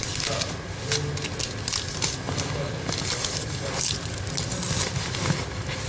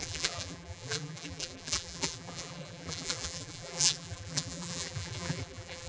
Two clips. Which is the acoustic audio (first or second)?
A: first